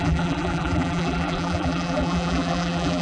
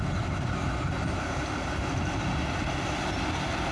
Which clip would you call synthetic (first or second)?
first